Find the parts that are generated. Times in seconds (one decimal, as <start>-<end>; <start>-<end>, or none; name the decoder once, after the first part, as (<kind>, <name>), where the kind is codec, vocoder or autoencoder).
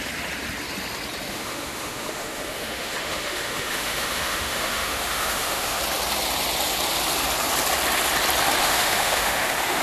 1.3-5.8 (autoencoder, DAC-VAE); 8.6-9.8